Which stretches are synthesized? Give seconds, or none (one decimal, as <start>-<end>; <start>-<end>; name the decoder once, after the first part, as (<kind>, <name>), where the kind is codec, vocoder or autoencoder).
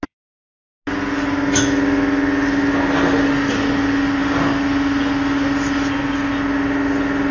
none